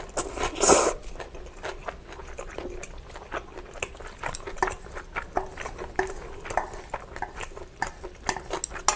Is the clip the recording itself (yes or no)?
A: yes